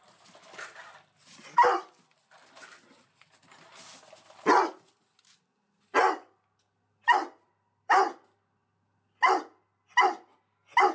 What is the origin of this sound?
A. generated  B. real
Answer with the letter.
B